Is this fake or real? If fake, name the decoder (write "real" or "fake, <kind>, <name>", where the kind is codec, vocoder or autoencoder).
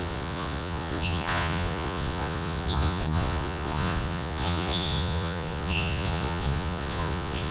fake, vocoder, Vocos